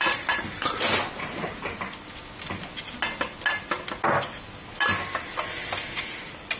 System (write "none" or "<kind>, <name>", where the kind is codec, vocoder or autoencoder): none